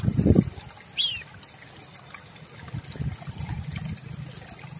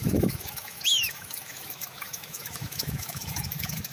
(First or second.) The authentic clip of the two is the first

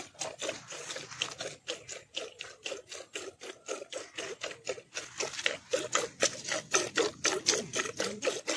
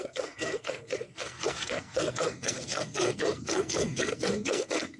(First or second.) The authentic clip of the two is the first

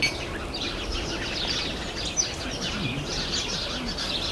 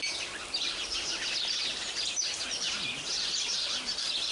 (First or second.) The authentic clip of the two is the first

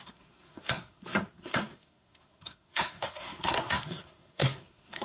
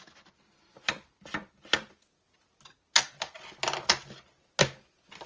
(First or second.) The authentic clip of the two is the second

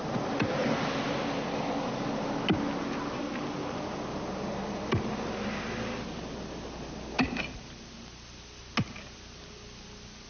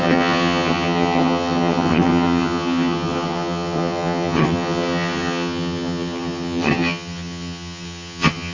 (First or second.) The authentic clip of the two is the first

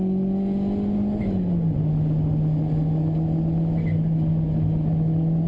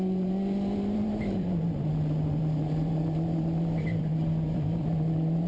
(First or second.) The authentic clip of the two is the first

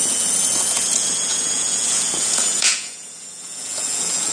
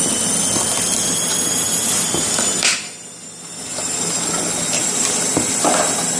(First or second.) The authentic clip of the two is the second